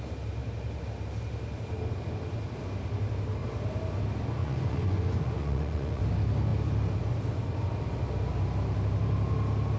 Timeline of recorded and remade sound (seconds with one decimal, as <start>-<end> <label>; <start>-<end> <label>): 0.0-4.4 recorded; 4.4-6.0 remade; 6.0-9.8 recorded